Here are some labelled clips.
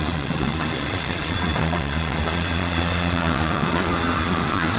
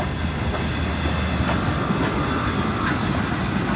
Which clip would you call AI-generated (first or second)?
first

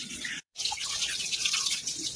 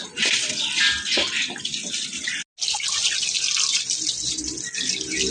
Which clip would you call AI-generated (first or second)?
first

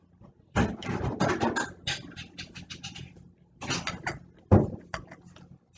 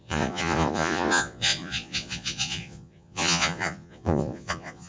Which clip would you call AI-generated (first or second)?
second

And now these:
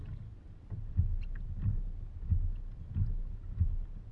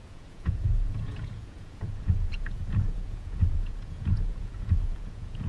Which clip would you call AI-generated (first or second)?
second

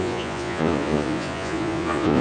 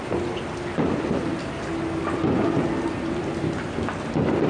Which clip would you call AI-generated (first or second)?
first